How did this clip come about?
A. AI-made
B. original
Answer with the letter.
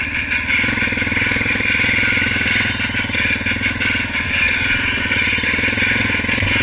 B